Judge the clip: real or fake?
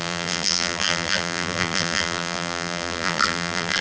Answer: fake